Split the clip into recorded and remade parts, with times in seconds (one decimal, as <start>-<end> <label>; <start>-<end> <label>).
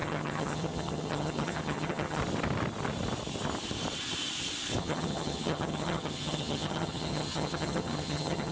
0.0-2.2 remade; 2.2-4.8 recorded; 4.8-8.5 remade